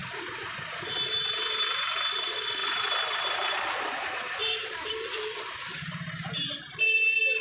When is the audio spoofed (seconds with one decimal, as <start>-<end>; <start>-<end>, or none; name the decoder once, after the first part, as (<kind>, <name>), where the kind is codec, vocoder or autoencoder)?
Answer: 2.6-3.8 (vocoder, BigVGAN v2); 4.4-6.8